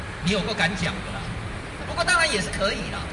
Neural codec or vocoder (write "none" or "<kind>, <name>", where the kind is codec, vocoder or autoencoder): none